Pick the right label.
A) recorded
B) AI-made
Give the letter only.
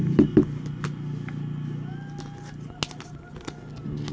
A